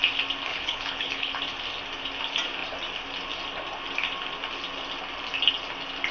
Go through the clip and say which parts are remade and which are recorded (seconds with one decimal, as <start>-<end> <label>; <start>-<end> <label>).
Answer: 0.0-0.5 recorded; 0.5-1.4 remade; 1.4-6.1 recorded